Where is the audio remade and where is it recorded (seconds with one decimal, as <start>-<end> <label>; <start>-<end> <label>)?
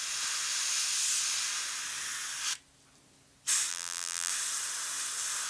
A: 0.0-3.7 recorded; 3.7-4.3 remade; 4.3-5.5 recorded